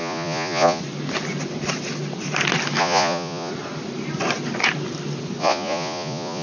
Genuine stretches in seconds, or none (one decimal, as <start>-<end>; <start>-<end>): 0.8-2.8; 3.5-5.4